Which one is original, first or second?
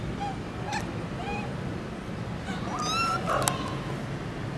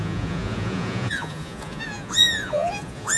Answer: first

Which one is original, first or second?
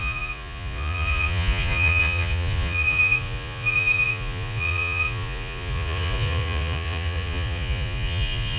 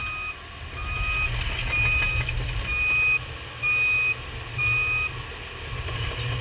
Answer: second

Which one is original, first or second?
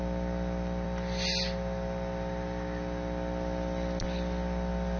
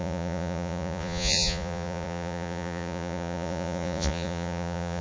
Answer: first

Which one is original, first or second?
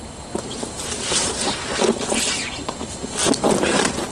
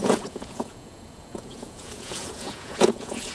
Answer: first